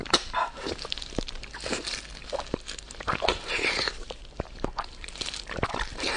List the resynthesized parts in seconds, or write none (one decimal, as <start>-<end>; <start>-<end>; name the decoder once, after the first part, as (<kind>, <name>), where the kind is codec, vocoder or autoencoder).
0.0-1.0 (vocoder, BigVGAN v2); 3.4-6.2